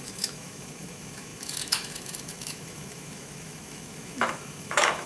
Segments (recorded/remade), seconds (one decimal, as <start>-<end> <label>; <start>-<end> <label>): 0.0-5.1 remade